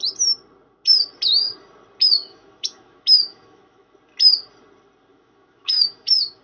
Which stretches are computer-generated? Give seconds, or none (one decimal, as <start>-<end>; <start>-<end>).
2.2-3.9; 5.1-6.4